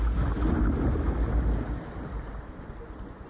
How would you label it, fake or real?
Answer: real